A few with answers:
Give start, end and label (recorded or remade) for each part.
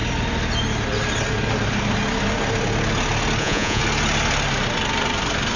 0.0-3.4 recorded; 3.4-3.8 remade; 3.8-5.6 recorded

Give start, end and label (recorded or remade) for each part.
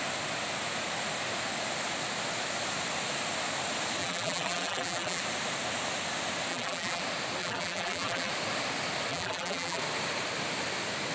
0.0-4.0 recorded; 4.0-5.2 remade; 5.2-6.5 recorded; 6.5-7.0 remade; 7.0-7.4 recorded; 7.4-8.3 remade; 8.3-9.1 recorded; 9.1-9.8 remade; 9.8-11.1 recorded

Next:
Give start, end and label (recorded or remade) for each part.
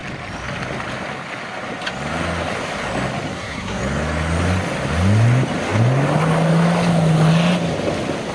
0.0-3.3 recorded; 3.3-3.8 remade; 3.8-8.3 recorded